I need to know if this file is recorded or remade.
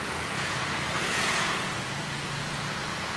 remade